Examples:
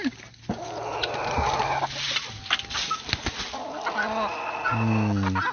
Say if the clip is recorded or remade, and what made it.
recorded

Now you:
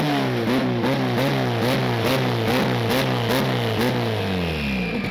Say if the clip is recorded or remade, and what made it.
recorded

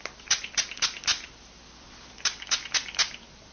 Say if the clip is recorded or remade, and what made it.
remade, vocoder, BigVGAN v2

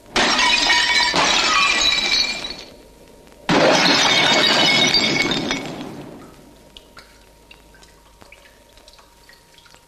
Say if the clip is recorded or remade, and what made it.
recorded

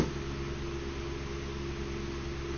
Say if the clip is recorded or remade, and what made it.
recorded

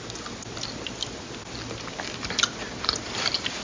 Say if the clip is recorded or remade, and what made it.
recorded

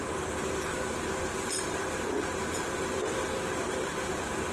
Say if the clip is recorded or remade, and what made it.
remade, vocoder, BigVGAN v2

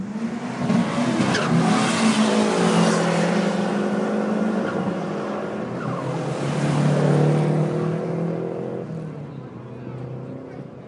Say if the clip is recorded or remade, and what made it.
recorded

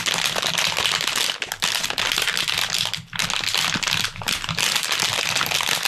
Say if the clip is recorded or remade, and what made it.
recorded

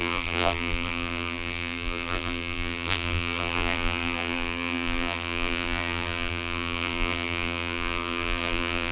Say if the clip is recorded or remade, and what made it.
remade, vocoder, BigVGAN v2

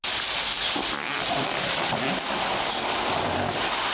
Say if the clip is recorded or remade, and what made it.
recorded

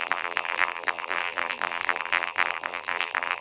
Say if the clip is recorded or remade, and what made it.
remade, vocoder, BigVGAN v2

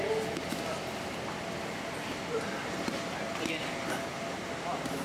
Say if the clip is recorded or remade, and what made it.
recorded